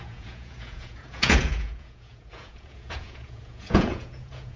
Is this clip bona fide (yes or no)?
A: no